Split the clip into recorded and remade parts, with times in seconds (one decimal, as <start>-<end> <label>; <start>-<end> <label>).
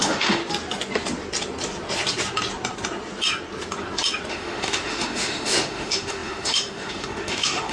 0.0-0.4 remade; 0.4-4.3 recorded; 4.3-7.7 remade